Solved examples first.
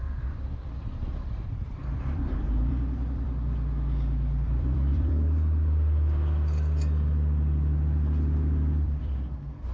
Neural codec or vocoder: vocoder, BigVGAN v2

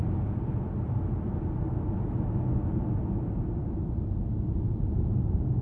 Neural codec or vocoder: none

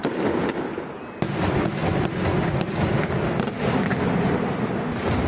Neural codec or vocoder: none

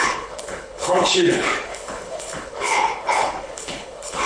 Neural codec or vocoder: codec, HILCodec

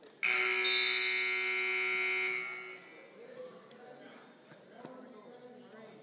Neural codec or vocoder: none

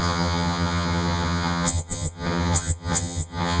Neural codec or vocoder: vocoder, HiFi-GAN